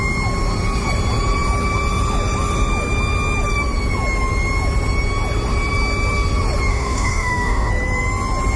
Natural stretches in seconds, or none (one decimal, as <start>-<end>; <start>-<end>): 0.0-6.7; 7.7-8.6